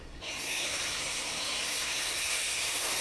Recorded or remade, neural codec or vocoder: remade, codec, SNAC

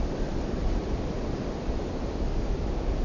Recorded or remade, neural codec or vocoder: recorded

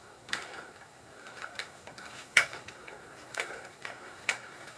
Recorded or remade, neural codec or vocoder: remade, codec, SNAC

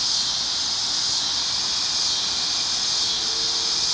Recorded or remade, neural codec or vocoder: recorded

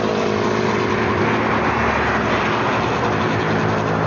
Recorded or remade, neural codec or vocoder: recorded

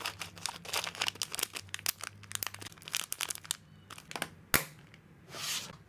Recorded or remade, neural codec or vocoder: recorded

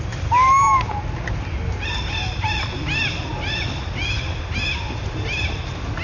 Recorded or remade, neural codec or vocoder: recorded